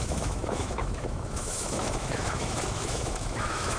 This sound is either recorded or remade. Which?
remade